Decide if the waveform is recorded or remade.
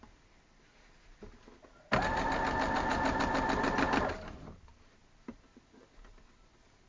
recorded